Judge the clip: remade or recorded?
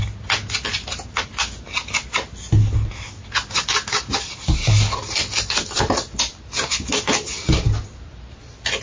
recorded